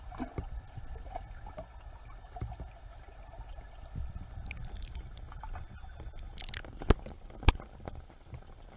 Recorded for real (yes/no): yes